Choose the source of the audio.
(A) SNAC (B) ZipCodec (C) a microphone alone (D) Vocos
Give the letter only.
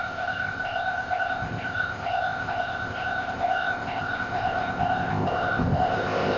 B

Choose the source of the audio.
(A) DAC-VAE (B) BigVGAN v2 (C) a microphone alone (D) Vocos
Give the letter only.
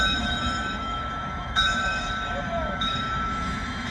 A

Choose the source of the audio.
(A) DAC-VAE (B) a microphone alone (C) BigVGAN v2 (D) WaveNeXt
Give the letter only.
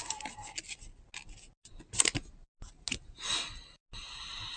B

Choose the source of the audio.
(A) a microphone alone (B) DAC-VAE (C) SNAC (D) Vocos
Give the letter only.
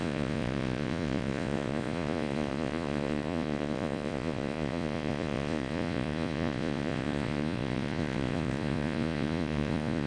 D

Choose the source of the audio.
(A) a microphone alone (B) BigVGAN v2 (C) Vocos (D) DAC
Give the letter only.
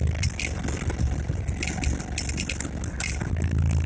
A